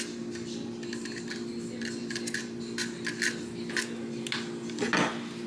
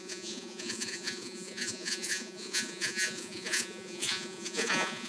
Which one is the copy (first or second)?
second